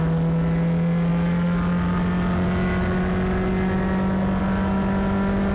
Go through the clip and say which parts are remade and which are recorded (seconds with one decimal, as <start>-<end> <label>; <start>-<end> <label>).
0.0-5.5 recorded